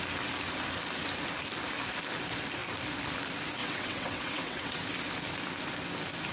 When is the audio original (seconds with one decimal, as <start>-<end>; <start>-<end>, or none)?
0.0-3.6; 4.8-6.3